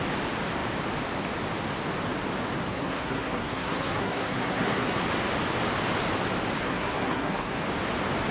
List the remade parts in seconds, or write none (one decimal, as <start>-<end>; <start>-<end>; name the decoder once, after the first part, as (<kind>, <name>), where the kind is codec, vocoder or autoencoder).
2.7-5.0 (codec, SNAC); 6.6-7.6